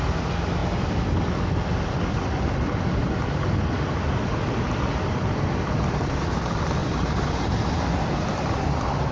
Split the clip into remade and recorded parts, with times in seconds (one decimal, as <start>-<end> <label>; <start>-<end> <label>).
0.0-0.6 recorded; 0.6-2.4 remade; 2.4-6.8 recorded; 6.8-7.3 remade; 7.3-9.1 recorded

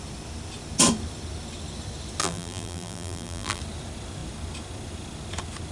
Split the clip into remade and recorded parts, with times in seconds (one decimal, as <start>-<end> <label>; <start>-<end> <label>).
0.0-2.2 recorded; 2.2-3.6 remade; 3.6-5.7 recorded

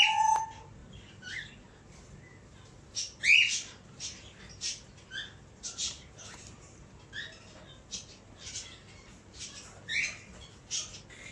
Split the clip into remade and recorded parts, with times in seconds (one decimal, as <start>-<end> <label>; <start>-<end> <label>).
0.0-11.3 recorded

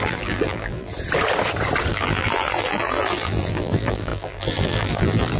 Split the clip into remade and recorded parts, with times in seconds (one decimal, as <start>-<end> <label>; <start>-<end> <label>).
0.0-0.9 remade; 0.9-1.9 recorded; 1.9-5.4 remade